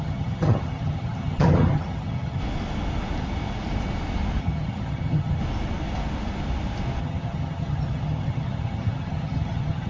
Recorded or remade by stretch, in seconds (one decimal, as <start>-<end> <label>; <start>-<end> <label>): 0.0-2.4 remade; 2.4-4.4 recorded; 4.4-5.4 remade; 5.4-7.0 recorded; 7.0-9.9 remade